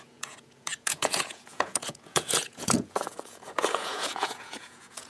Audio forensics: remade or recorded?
remade